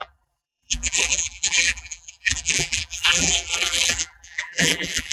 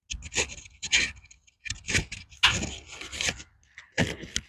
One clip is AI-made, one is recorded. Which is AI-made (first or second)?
first